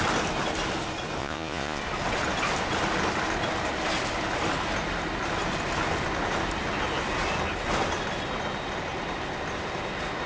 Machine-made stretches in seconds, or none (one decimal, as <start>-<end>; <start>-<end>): 1.2-1.8